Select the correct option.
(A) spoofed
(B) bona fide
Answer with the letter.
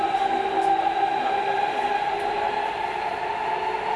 B